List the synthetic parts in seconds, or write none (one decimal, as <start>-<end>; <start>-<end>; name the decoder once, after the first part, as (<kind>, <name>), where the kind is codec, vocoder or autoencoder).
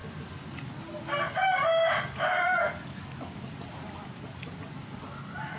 none